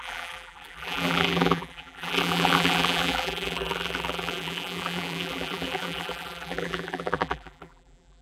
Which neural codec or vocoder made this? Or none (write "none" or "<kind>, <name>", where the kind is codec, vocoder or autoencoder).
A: vocoder, BigVGAN v2